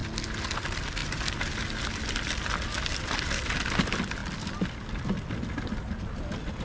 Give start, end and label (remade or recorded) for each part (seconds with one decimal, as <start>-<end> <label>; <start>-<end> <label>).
0.0-6.6 recorded